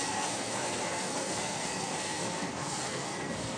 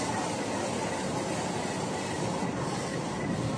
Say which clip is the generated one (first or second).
first